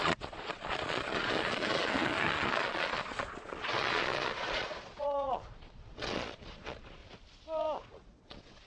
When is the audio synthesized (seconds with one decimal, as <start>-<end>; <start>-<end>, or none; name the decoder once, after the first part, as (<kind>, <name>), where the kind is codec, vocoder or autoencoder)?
0.0-7.0 (vocoder, Vocos); 7.8-8.7